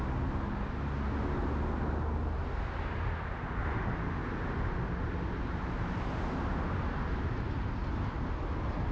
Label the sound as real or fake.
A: real